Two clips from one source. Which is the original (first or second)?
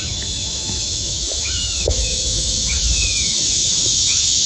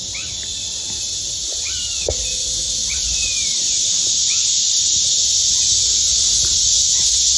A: second